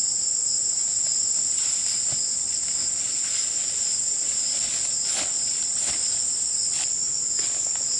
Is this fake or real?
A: real